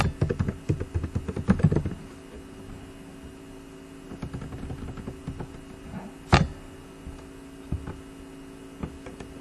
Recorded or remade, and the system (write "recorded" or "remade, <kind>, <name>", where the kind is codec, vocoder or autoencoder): recorded